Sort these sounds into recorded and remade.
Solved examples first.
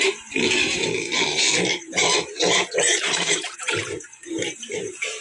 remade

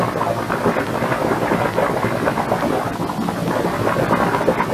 recorded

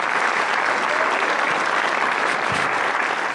recorded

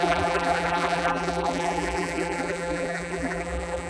remade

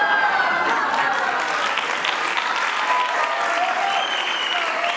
recorded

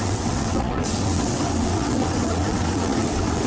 remade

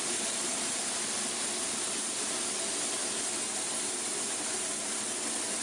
recorded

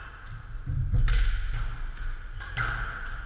recorded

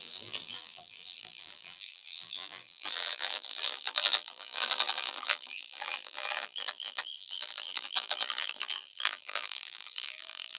remade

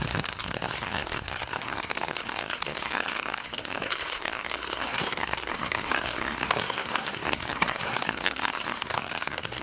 remade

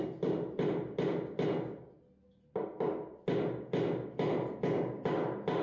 recorded